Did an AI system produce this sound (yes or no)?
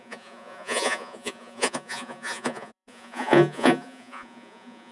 yes